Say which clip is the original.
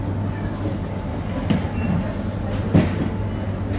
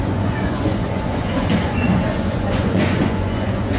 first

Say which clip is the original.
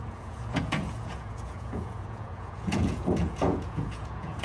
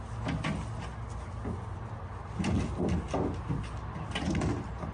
second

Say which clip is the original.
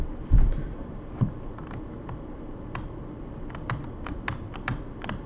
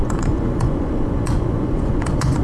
first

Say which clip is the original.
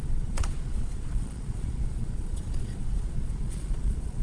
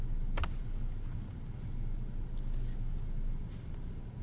second